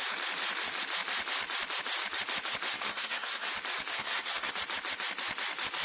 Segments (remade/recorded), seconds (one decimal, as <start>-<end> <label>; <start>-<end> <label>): 0.0-2.7 recorded; 2.7-3.5 remade; 3.5-3.9 recorded; 3.9-4.5 remade; 4.5-5.8 recorded